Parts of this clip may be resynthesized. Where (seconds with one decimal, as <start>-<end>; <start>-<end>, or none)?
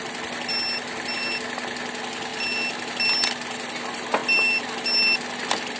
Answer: none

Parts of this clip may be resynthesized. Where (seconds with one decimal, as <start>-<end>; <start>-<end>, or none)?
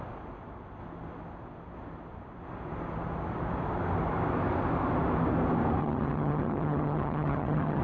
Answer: 5.8-7.8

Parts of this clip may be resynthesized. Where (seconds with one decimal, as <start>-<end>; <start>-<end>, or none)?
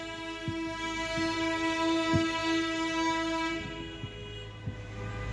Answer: none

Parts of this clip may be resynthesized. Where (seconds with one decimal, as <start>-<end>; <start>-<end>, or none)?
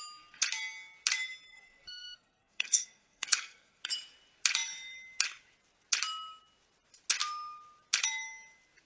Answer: 1.5-3.8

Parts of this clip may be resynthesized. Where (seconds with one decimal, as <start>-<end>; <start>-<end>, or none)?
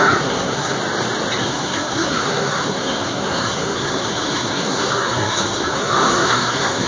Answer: 0.0-0.8; 1.4-6.9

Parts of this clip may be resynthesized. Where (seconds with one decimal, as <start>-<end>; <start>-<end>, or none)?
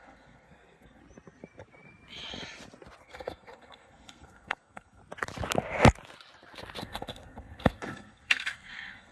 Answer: 0.0-1.0; 3.0-5.0; 6.8-9.1